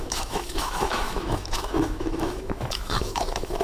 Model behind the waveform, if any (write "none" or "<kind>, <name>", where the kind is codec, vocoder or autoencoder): autoencoder, DAC-VAE